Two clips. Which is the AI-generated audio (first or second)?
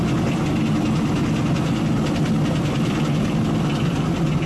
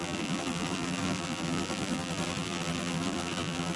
second